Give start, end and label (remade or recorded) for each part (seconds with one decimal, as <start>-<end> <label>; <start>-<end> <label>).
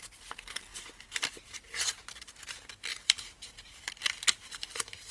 0.0-2.9 recorded; 2.9-3.8 remade; 3.8-5.1 recorded